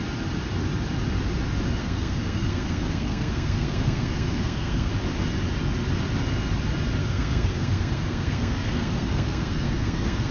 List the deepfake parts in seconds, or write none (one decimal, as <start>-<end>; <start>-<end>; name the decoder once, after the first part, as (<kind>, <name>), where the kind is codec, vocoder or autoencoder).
1.8-4.9 (codec, SNAC); 7.0-10.3